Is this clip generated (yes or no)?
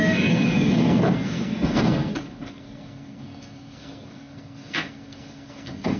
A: yes